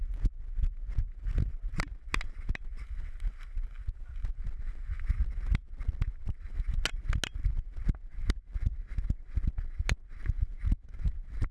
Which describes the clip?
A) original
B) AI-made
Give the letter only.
A